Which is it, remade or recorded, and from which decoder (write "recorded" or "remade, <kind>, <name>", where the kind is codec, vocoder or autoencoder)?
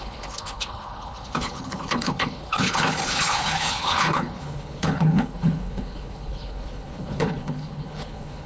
remade, codec, HILCodec